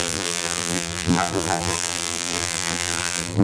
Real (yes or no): no